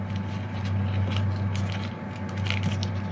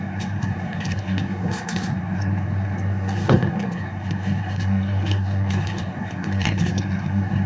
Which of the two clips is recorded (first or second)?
first